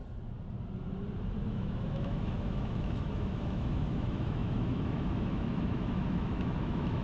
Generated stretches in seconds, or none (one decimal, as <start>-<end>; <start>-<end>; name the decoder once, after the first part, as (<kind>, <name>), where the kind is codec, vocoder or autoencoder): 1.5-7.0 (autoencoder, DAC-VAE)